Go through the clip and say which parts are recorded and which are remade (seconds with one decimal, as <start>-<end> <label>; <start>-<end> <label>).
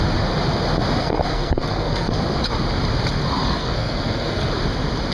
0.0-1.0 recorded; 1.0-2.2 remade; 2.2-3.6 recorded; 3.6-4.5 remade; 4.5-5.1 recorded